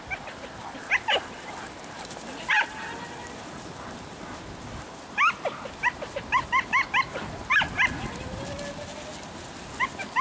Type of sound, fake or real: real